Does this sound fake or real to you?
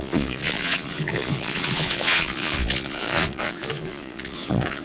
fake